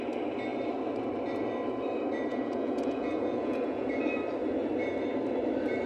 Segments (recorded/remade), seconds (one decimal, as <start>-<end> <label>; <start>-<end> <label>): 0.0-2.3 recorded; 2.3-4.0 remade; 4.0-5.9 recorded